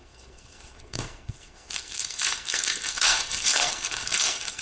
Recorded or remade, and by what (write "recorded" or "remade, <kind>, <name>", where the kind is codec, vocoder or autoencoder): remade, codec, SNAC